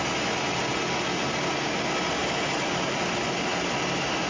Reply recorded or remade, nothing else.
recorded